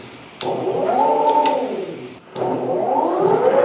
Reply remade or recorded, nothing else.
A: recorded